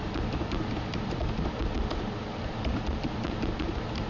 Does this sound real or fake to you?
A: fake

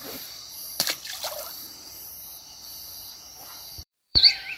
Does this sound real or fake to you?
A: fake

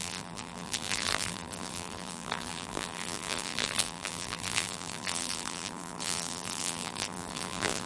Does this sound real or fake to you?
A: fake